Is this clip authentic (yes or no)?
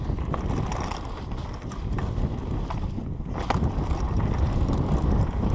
yes